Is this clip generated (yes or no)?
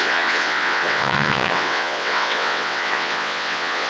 yes